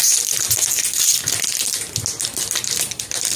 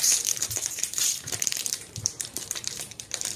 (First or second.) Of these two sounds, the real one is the first